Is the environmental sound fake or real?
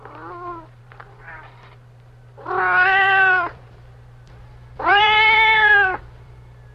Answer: fake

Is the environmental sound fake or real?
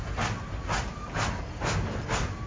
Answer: real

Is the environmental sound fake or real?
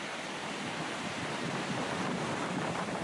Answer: fake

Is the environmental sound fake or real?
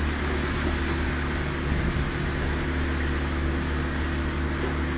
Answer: real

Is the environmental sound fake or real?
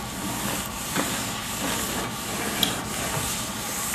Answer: real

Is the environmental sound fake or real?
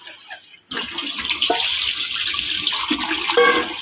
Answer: real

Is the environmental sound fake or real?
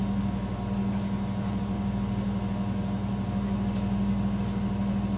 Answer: real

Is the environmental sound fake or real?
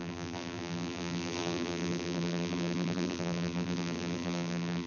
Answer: fake